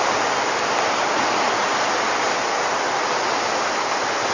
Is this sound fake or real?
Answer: real